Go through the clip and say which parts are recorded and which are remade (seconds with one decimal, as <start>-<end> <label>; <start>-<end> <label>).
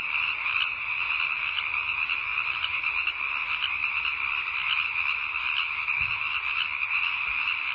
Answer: 0.0-7.7 recorded